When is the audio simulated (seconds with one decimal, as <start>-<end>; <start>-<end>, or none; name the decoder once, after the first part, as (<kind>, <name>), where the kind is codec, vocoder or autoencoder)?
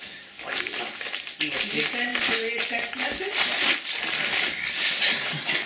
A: none